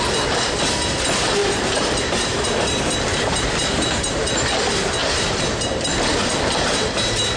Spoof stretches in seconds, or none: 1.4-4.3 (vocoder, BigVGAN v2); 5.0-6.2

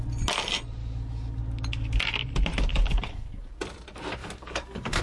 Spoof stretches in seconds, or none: 0.8-1.4 (codec, DAC); 2.7-3.5; 4.2-5.0

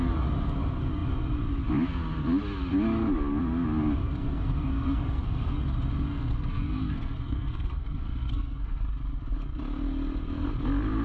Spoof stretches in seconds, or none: 4.0-5.6 (codec, SNAC); 6.1-8.8

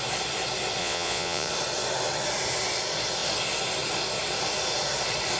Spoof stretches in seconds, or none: 0.8-1.5 (vocoder, Vocos)

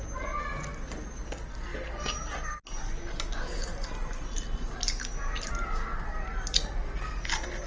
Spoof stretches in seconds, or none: none

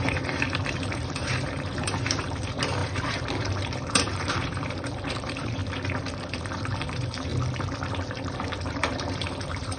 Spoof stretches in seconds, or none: 0.0-5.6 (vocoder, BigVGAN v2); 6.2-7.3; 7.9-9.8